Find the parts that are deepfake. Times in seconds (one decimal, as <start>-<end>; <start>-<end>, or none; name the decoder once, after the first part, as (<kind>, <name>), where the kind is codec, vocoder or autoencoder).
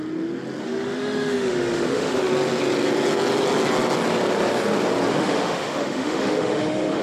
0.6-2.3 (autoencoder, DAC-VAE); 5.1-7.0